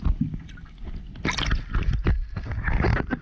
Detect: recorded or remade recorded